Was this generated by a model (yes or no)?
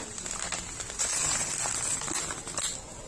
no